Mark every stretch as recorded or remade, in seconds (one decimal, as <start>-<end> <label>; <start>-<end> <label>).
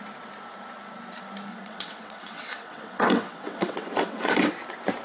0.0-1.5 recorded; 1.5-4.5 remade; 4.5-5.0 recorded